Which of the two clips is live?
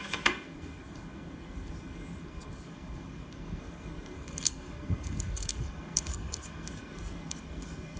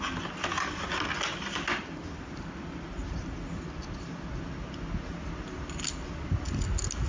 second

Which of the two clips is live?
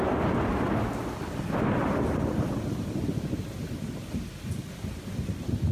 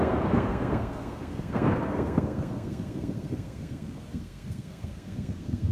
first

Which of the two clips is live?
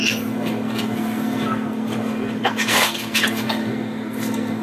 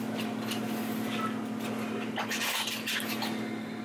second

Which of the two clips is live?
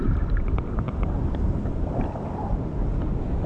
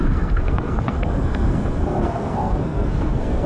first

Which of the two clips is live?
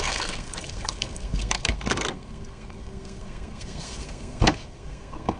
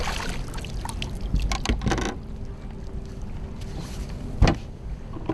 second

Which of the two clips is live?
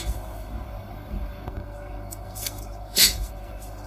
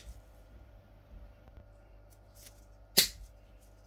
second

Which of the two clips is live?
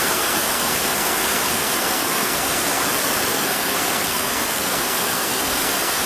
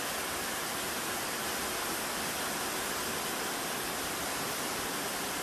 second